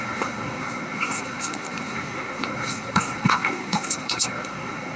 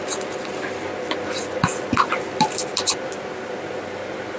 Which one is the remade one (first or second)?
first